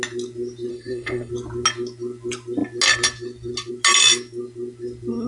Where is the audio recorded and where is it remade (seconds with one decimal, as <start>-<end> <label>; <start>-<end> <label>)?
0.0-0.7 recorded; 0.7-1.3 remade; 1.3-5.3 recorded